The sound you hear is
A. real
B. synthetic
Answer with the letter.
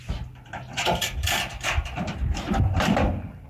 B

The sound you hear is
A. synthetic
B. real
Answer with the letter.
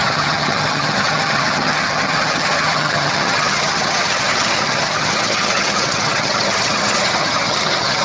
A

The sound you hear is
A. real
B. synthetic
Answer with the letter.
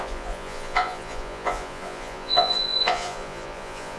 B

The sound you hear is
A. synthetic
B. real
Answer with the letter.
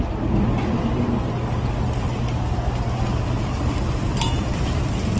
B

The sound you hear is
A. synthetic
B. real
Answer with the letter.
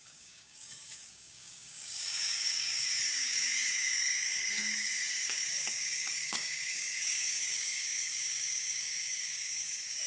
A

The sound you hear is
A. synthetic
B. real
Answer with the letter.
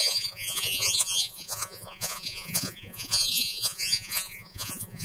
A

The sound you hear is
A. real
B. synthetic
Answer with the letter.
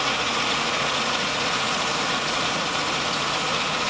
B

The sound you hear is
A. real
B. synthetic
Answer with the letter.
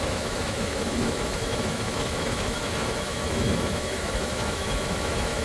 B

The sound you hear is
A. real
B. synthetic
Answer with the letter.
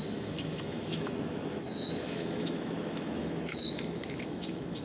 B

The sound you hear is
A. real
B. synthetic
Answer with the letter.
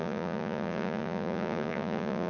B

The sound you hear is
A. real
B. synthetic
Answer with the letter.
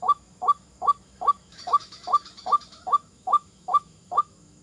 B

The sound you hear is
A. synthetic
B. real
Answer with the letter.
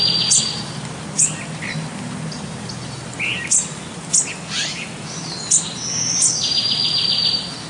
B